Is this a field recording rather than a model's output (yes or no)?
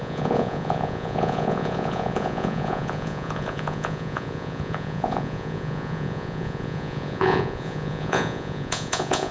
no